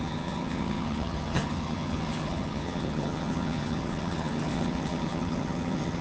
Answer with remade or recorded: remade